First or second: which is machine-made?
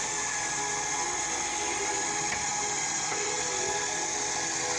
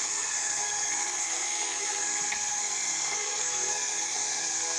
second